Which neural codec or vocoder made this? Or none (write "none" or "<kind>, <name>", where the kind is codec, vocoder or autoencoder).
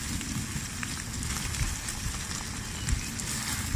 none